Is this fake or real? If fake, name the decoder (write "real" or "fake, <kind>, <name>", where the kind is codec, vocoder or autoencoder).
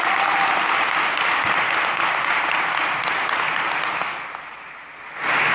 real